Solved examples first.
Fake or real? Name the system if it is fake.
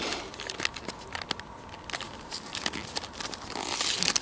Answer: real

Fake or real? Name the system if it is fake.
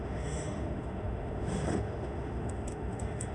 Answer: fake, autoencoder, DAC-VAE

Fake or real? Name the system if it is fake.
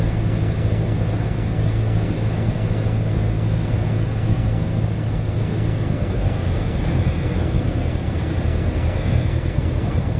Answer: fake, codec, SNAC